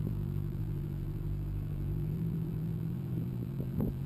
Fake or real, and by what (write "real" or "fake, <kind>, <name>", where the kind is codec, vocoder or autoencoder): fake, vocoder, BigVGAN v2